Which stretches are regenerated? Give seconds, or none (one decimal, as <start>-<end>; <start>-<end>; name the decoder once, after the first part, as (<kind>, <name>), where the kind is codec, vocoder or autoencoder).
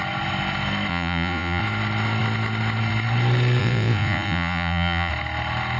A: 0.9-1.6 (vocoder, Vocos); 3.6-5.1